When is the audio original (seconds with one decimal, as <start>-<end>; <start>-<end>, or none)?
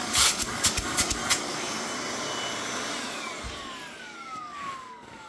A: 1.2-4.0